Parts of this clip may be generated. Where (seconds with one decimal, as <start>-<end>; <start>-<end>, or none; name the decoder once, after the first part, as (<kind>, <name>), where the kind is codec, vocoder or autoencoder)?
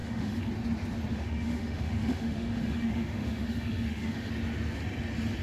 0.0-0.5 (autoencoder, DAC-VAE); 1.1-4.3